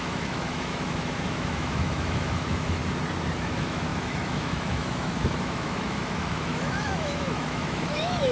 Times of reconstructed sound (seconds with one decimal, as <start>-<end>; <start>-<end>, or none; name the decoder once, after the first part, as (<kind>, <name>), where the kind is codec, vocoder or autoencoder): 0.0-2.8 (autoencoder, DAC-VAE); 3.4-8.3